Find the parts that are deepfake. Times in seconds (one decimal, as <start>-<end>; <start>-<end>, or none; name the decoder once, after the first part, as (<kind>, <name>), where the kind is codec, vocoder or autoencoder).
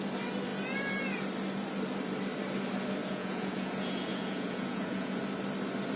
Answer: 3.0-5.2 (vocoder, Vocos)